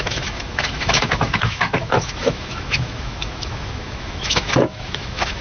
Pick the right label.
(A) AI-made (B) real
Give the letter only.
A